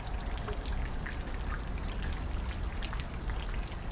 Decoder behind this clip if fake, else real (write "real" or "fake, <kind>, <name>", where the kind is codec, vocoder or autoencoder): real